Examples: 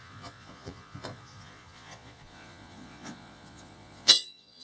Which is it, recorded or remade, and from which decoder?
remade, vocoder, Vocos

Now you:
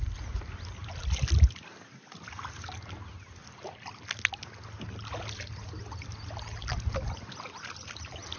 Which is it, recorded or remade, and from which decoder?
recorded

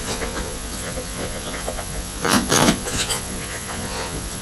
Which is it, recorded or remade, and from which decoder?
remade, vocoder, Vocos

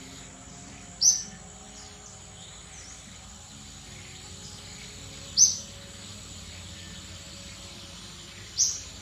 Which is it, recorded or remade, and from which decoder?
recorded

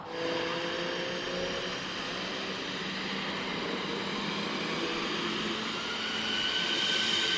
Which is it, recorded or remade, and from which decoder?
recorded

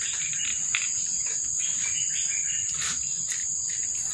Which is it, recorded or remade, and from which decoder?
recorded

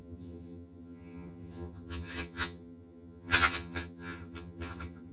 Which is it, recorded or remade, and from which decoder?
remade, vocoder, HiFi-GAN